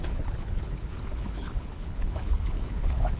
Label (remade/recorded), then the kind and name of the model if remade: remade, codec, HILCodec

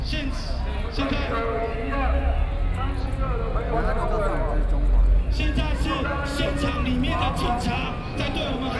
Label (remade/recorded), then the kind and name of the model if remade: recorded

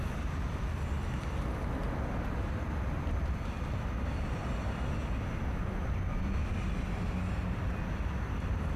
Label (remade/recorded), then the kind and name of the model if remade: recorded